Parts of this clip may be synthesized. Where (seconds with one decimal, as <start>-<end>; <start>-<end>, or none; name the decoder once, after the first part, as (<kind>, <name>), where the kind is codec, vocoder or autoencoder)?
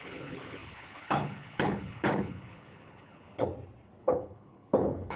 0.0-3.5 (codec, HILCodec); 4.0-5.2